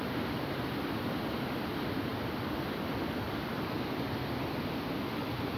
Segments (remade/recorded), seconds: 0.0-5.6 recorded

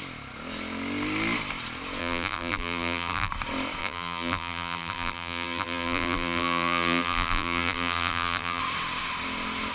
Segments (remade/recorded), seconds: 0.0-2.0 recorded; 2.0-3.3 remade; 3.3-3.8 recorded; 3.8-8.6 remade; 8.6-9.7 recorded

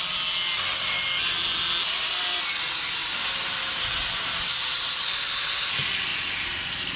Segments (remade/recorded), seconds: 0.0-3.0 recorded; 3.0-4.6 remade; 4.6-6.1 recorded; 6.1-7.0 remade

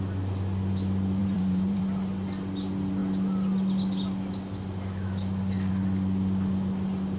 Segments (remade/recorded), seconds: 0.0-1.2 recorded; 1.2-1.8 remade; 1.8-7.2 recorded

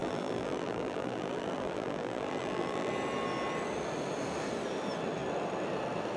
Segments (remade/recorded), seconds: 0.0-2.9 remade; 2.9-6.2 recorded

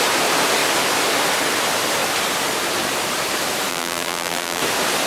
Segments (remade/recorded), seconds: 0.0-3.7 recorded; 3.7-4.6 remade; 4.6-5.1 recorded